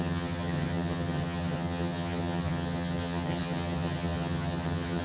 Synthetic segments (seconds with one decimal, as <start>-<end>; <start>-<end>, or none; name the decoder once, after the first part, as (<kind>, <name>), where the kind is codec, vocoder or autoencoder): 0.0-5.0 (vocoder, HiFi-GAN)